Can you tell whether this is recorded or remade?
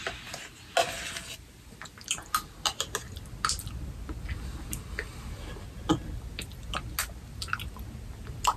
recorded